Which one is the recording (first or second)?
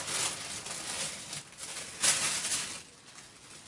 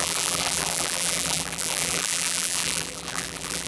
first